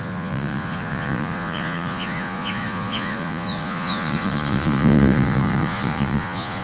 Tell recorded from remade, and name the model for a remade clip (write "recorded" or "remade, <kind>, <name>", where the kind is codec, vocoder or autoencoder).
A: remade, vocoder, Vocos